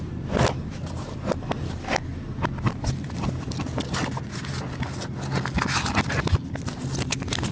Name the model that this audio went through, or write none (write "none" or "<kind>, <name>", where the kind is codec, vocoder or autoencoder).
none